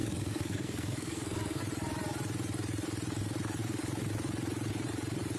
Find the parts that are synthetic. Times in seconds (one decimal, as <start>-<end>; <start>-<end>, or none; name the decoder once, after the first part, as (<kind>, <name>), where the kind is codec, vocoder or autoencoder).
0.0-1.6 (codec, SNAC)

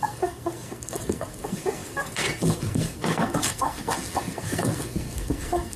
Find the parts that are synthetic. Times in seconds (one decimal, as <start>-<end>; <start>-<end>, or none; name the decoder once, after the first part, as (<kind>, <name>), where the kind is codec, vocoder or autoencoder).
0.0-5.8 (codec, SNAC)

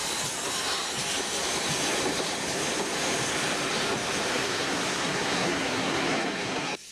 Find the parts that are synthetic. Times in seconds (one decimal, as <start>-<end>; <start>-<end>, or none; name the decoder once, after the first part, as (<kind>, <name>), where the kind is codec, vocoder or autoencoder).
4.3-6.9 (codec, SNAC)

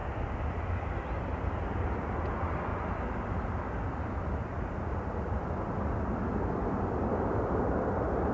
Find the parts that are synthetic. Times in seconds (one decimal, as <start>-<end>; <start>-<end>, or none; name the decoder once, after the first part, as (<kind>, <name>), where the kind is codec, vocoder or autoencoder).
none

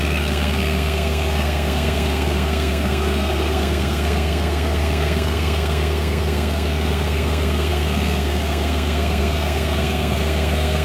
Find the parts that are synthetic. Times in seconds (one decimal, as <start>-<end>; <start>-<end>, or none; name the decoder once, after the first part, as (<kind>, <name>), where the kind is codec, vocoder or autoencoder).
0.0-10.8 (codec, SNAC)

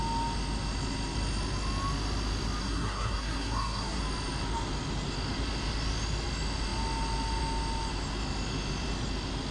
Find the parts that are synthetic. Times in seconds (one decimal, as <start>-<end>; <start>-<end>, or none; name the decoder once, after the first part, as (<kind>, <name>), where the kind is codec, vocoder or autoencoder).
2.6-4.0 (codec, SNAC)